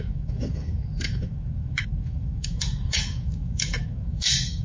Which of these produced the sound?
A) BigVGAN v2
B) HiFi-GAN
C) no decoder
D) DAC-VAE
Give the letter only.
D